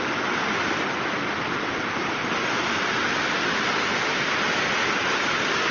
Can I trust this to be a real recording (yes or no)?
yes